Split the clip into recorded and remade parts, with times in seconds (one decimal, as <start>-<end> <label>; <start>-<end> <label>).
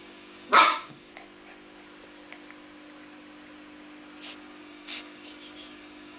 0.0-1.1 remade; 1.1-4.6 recorded; 4.6-6.2 remade